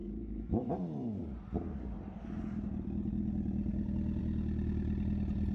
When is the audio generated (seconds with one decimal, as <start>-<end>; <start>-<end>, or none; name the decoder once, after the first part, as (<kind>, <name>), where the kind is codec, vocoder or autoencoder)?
0.0-0.7 (autoencoder, DAC-VAE)